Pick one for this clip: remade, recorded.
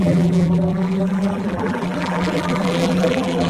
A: remade